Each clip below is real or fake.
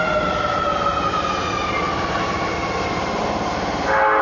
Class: real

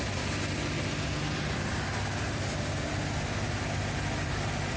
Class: real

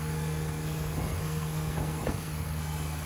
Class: fake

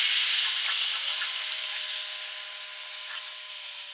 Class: real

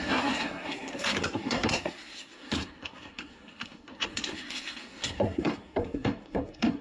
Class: fake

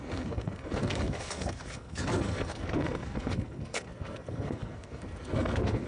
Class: fake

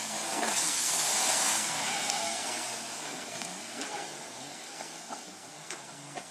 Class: fake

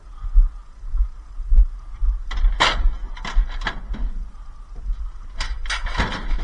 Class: real